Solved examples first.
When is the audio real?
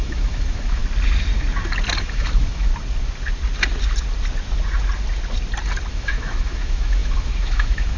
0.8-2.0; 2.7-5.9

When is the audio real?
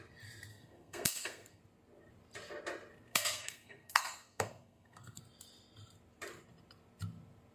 0.0-0.5; 1.6-3.1; 5.2-7.5